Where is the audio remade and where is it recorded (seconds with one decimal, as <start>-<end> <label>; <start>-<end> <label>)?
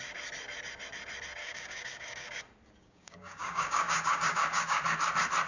0.0-1.4 recorded; 1.4-2.4 remade; 2.4-2.8 recorded; 2.8-4.8 remade; 4.8-5.5 recorded